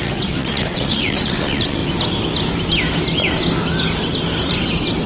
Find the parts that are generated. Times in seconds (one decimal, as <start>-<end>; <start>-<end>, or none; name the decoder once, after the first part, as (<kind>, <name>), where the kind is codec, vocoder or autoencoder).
0.0-1.8 (vocoder, WaveNeXt)